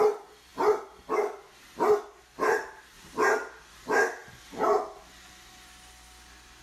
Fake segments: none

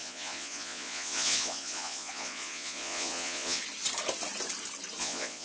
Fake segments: 0.0-3.6 (vocoder, Vocos); 5.0-5.4

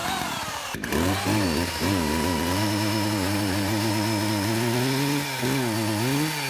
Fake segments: 0.0-3.9 (vocoder, BigVGAN v2)